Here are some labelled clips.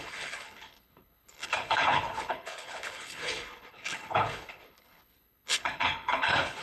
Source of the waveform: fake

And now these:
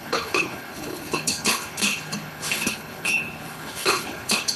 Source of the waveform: fake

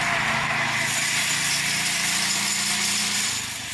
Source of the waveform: real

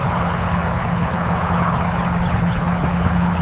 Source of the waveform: fake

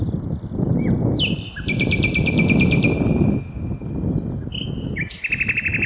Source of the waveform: real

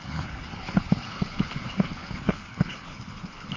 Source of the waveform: fake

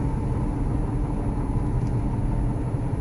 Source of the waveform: real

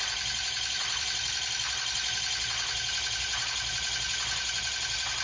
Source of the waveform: real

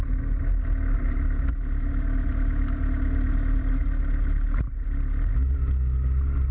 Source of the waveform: real